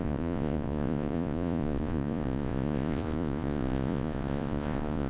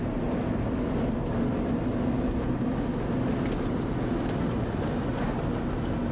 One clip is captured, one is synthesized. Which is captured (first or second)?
second